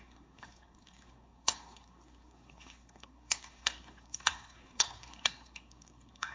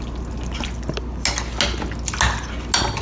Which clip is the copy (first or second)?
first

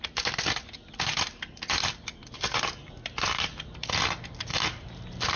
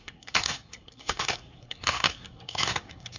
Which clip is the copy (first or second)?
second